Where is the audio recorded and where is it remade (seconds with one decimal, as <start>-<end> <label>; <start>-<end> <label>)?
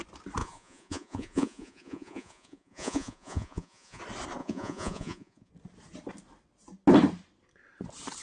0.0-0.4 recorded; 0.4-4.0 remade; 4.0-4.4 recorded; 4.4-5.5 remade; 5.5-8.2 recorded